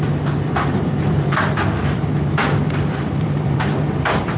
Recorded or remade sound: remade